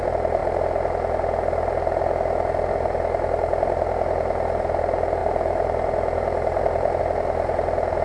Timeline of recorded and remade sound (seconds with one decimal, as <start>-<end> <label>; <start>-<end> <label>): 0.0-8.0 recorded

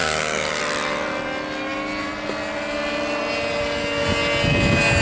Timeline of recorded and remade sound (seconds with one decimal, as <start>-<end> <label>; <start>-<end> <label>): 0.0-0.6 remade; 0.6-5.0 recorded

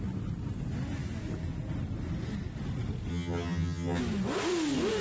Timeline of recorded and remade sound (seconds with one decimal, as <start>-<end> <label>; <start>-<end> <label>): 0.0-3.1 recorded; 3.1-4.0 remade; 4.0-5.0 recorded

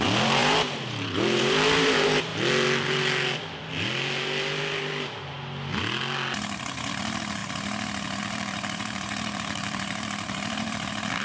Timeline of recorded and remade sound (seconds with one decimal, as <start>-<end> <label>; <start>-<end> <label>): 0.0-2.3 remade; 2.3-6.9 recorded; 6.9-7.4 remade; 7.4-8.2 recorded; 8.2-11.2 remade

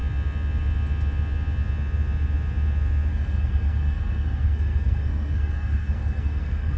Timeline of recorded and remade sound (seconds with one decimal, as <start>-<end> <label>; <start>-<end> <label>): 0.0-3.1 recorded; 3.1-6.8 remade

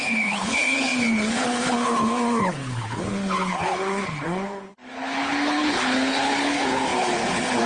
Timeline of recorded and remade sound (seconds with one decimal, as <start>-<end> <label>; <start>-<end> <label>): 0.0-7.7 remade

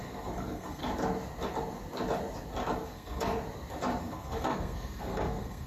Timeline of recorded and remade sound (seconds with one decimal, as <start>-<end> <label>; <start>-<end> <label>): 0.0-0.8 remade; 0.8-2.8 recorded; 2.8-3.3 remade; 3.3-4.0 recorded; 4.0-5.7 remade

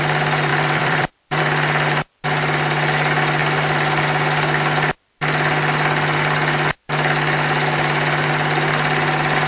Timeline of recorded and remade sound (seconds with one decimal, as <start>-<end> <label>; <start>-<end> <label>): 0.0-0.5 recorded; 0.5-1.4 remade; 1.4-9.5 recorded